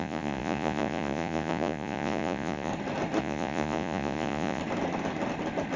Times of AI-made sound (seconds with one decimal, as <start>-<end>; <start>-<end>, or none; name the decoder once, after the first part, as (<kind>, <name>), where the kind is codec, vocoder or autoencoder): 0.0-2.7 (vocoder, Vocos); 3.2-4.6